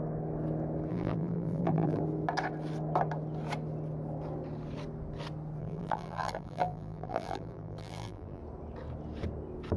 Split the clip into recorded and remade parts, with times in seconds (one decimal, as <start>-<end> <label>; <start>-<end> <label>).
0.0-0.9 recorded; 0.9-2.0 remade; 2.0-5.6 recorded; 5.6-8.4 remade; 8.4-9.8 recorded